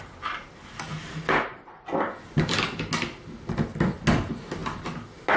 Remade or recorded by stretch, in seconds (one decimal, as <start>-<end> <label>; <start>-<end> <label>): 0.0-5.4 recorded